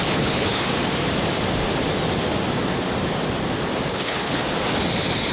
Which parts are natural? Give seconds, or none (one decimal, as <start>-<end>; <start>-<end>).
0.7-3.9; 4.4-5.3